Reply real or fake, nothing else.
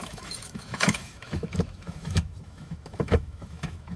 fake